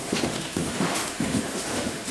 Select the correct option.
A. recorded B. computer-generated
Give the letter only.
B